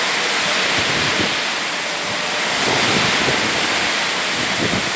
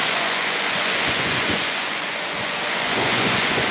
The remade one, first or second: second